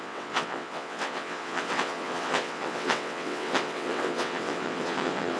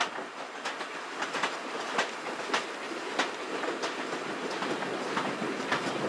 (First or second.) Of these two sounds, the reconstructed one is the first